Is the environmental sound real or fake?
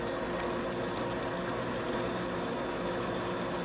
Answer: real